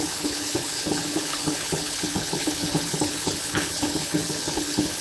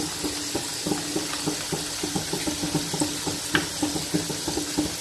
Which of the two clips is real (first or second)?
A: second